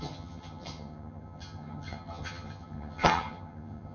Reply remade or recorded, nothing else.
remade